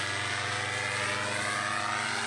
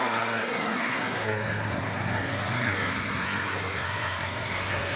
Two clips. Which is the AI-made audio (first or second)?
second